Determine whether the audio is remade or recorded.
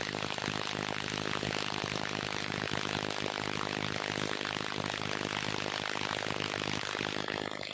recorded